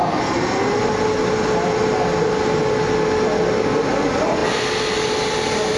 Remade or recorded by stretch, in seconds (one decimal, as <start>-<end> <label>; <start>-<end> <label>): 0.0-5.8 recorded